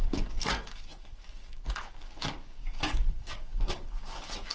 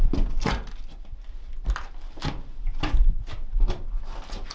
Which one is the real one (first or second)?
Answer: second